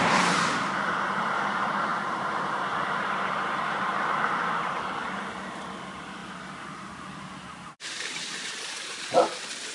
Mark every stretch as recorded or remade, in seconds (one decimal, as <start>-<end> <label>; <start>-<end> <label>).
0.0-6.2 remade; 6.2-8.1 recorded; 8.1-9.7 remade